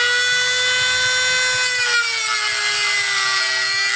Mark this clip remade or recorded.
recorded